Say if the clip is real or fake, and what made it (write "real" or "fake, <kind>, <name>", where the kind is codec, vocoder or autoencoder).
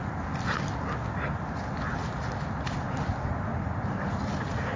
real